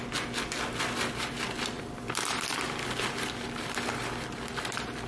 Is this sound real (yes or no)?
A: no